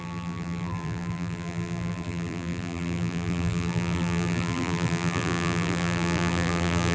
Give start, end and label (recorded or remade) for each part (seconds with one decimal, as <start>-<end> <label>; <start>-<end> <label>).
0.0-6.9 remade